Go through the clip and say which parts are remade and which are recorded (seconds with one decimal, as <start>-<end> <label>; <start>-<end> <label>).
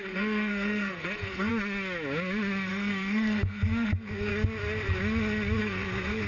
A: 0.0-1.5 remade; 1.5-2.7 recorded; 2.7-4.3 remade; 4.3-5.6 recorded; 5.6-6.3 remade